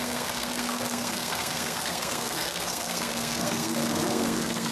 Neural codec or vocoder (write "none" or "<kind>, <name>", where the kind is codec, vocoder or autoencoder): codec, SNAC